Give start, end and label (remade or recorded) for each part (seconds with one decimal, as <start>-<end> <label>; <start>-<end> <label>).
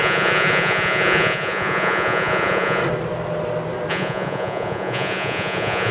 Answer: 0.0-2.8 remade; 2.8-3.9 recorded; 3.9-5.9 remade